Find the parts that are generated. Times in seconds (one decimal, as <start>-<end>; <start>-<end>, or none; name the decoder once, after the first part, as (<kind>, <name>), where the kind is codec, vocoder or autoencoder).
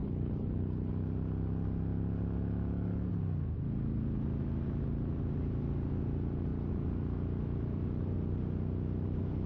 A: 0.0-0.9 (codec, HILCodec)